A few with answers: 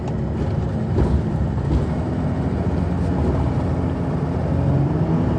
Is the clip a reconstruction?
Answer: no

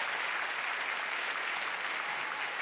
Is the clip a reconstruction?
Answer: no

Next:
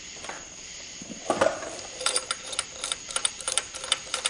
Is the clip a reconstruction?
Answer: yes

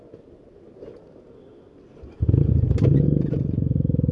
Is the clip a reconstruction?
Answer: no